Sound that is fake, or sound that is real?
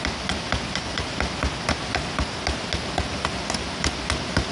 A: real